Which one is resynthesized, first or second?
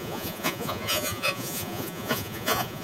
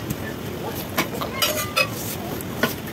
first